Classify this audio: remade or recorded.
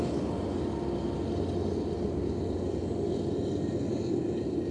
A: recorded